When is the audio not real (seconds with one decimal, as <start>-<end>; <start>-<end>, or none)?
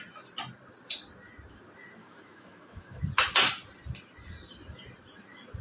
2.0-3.0